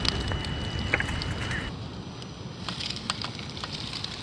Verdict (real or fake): real